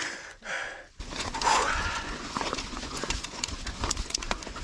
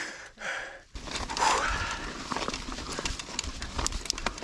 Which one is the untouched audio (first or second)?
second